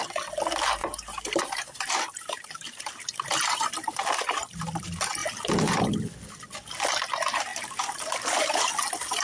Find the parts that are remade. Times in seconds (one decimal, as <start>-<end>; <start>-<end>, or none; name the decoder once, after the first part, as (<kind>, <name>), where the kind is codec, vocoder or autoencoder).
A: 0.8-4.8 (vocoder, BigVGAN v2); 7.5-8.7